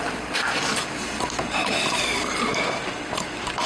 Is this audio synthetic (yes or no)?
no